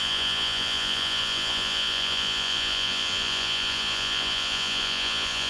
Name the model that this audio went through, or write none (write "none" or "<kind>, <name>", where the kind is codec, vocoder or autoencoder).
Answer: vocoder, Vocos